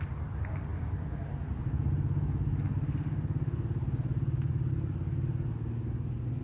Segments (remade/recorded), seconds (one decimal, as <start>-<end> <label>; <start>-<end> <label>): 0.0-6.4 recorded